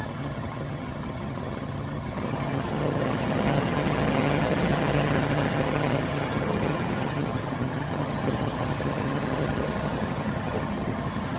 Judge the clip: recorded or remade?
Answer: remade